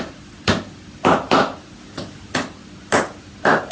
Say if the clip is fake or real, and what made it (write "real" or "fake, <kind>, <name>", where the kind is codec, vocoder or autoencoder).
real